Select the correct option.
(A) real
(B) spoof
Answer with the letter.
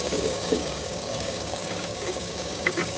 B